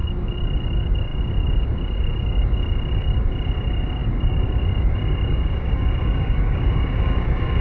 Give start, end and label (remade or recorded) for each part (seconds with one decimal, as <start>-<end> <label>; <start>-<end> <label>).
0.0-7.6 remade